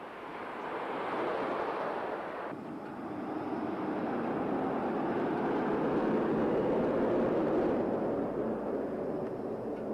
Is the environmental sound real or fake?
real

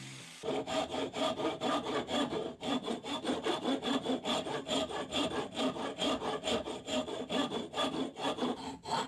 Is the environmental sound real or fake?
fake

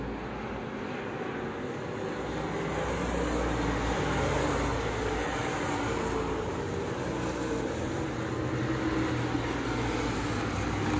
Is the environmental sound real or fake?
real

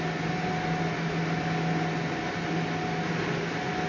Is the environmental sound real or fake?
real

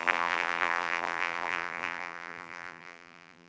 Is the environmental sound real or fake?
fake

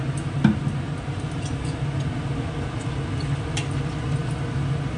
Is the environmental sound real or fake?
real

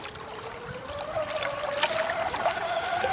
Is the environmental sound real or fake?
real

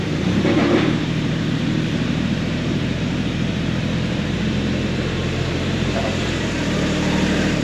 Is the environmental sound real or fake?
fake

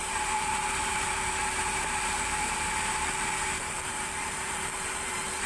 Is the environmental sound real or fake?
fake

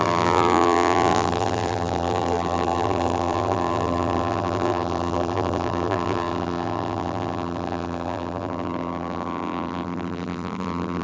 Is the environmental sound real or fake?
fake